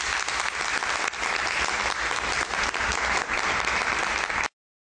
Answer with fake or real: real